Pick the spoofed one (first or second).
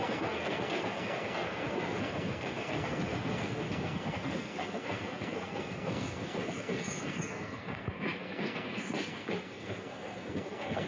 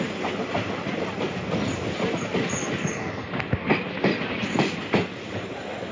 first